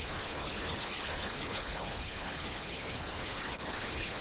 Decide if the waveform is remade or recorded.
remade